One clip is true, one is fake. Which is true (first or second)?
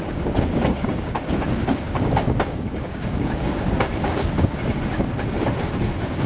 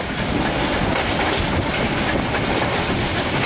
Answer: second